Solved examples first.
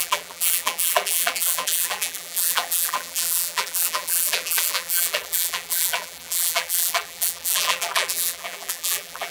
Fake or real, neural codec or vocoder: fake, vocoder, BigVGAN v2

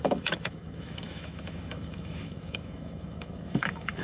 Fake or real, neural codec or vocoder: fake, autoencoder, DAC-VAE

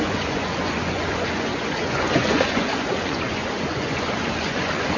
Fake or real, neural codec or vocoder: fake, vocoder, Vocos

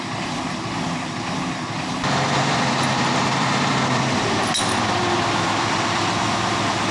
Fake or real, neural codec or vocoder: fake, vocoder, BigVGAN v2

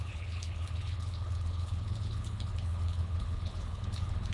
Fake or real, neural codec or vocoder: fake, codec, HILCodec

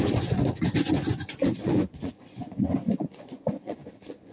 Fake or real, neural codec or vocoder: fake, vocoder, Vocos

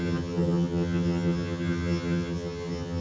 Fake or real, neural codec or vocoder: fake, vocoder, HiFi-GAN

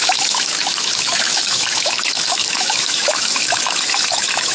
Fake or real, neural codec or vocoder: fake, autoencoder, DAC-VAE